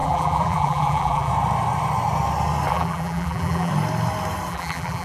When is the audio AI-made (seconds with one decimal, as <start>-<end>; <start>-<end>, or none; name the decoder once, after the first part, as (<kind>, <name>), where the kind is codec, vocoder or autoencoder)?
0.0-1.3 (vocoder, BigVGAN v2); 2.7-3.7; 4.5-5.0